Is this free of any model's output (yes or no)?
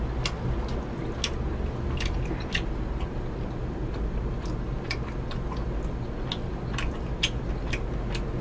yes